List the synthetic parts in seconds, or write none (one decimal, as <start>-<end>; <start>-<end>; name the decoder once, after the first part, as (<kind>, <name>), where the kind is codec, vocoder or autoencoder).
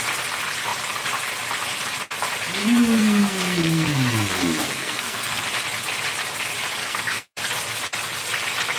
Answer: 2.6-5.4 (codec, SNAC); 6.8-7.4